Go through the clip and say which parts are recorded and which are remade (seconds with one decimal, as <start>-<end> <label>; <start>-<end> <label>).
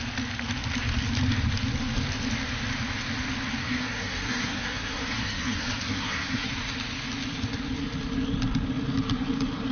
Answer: 0.0-3.6 recorded; 3.6-6.5 remade; 6.5-9.7 recorded